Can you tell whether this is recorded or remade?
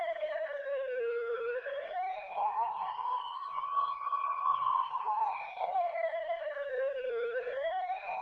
remade